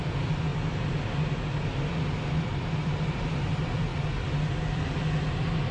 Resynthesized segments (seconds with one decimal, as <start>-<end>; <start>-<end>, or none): 0.0-3.9; 4.6-5.7